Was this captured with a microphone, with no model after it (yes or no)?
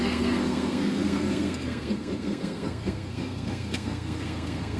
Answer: no